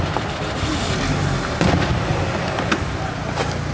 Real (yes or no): yes